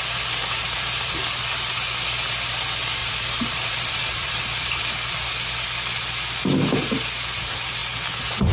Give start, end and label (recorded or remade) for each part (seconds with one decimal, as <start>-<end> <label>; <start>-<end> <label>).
0.0-0.6 recorded; 0.6-1.2 remade; 1.2-3.0 recorded; 3.0-4.8 remade; 4.8-8.5 recorded